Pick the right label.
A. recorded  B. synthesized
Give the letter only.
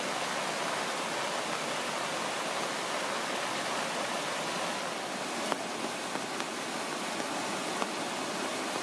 A